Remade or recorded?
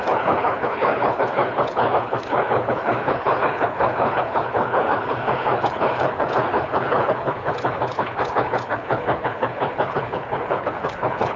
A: remade